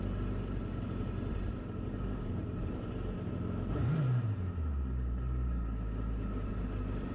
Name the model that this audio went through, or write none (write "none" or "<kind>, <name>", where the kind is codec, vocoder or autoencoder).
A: none